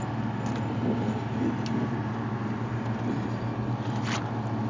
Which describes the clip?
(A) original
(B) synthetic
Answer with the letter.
A